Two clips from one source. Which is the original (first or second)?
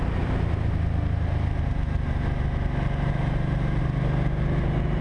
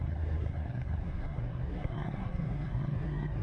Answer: first